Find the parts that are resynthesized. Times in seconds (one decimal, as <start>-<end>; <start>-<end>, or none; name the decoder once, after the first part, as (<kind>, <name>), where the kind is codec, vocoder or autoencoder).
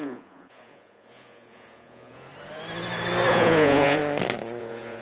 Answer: 0.0-2.3 (vocoder, Vocos); 3.3-4.0; 4.6-5.0